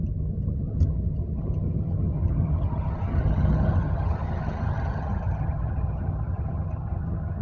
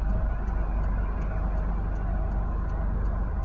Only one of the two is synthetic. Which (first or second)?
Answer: first